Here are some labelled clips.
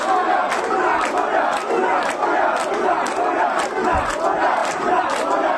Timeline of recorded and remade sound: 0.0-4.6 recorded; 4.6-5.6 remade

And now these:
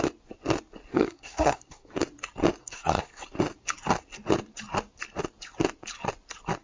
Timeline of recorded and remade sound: 0.0-0.9 recorded; 0.9-1.9 remade; 1.9-2.6 recorded; 2.6-3.2 remade; 3.2-6.6 recorded